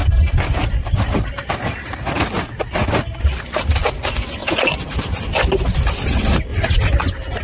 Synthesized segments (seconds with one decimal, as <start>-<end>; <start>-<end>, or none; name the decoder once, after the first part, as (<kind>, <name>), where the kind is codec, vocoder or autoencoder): none